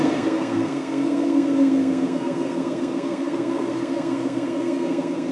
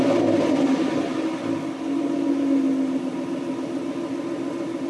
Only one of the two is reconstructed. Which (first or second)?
first